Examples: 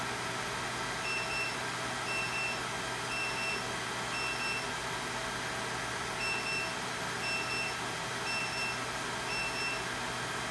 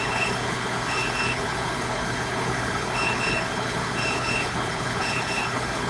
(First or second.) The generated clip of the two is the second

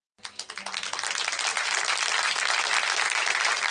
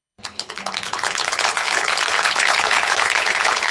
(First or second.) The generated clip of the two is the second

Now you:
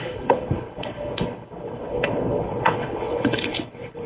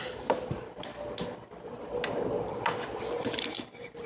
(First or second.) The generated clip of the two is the first